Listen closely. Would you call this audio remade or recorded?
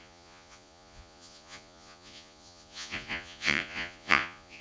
remade